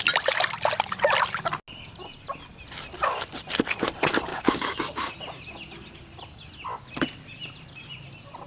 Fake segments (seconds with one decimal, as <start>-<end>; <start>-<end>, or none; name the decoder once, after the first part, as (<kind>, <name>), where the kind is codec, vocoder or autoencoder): 4.3-5.1 (codec, DAC)